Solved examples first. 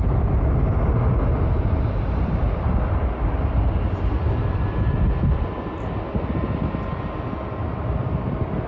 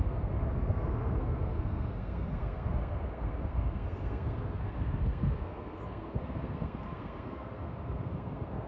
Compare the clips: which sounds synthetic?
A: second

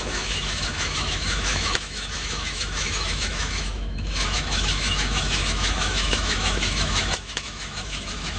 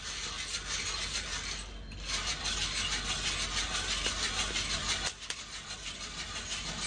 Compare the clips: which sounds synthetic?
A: first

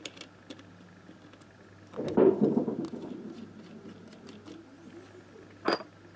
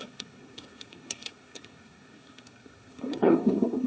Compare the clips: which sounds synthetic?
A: second